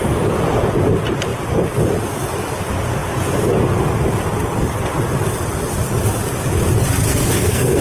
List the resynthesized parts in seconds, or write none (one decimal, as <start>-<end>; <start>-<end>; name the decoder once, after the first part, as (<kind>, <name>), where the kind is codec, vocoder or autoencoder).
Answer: 7.1-7.8 (codec, SNAC)